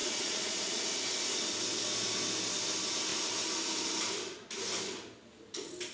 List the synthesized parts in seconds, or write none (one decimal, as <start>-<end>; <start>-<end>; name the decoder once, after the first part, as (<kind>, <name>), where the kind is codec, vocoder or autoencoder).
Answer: 0.0-0.8 (vocoder, Vocos)